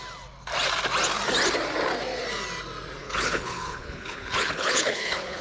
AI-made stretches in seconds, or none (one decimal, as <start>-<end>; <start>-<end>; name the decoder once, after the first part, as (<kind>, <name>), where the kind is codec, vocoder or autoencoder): 3.0-5.4 (codec, HILCodec)